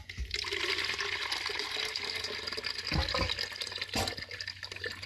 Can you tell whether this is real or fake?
real